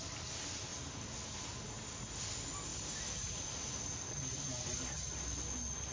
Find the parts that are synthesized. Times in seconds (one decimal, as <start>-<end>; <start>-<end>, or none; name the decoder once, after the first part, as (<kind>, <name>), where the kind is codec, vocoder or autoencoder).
none